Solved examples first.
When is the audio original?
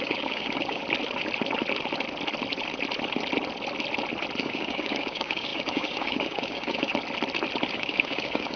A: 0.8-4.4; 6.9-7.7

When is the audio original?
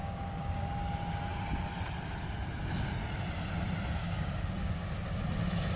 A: 0.8-4.0; 5.2-5.8